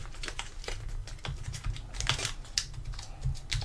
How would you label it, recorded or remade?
recorded